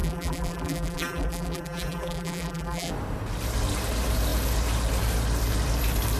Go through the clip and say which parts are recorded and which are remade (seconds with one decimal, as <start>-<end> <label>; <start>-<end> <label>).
0.0-2.9 remade; 2.9-6.2 recorded